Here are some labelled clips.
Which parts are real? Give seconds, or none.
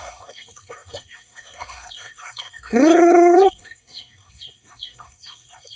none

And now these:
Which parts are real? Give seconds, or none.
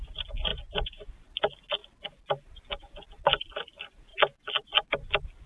0.0-0.5; 1.1-4.1; 4.9-5.5